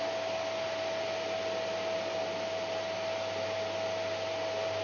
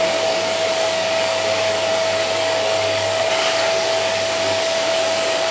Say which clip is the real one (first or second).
first